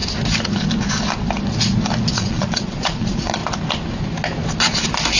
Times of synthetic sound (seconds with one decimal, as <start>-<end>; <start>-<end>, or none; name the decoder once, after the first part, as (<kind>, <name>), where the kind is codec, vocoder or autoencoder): 2.1-3.4 (vocoder, Vocos)